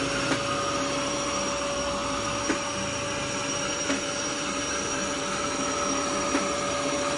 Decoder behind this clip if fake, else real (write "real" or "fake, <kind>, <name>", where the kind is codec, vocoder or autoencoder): real